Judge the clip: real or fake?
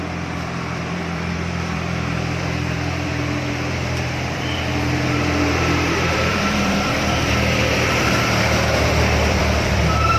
fake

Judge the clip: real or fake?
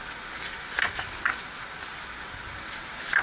real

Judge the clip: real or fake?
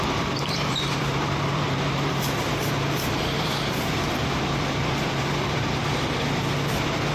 fake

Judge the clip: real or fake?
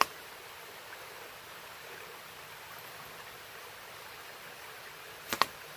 fake